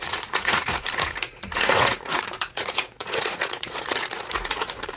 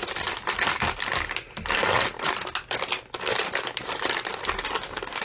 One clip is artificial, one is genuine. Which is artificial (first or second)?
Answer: first